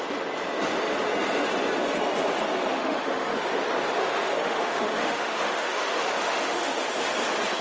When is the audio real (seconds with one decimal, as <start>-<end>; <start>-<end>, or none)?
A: 0.0-2.7; 3.5-4.0; 6.8-7.6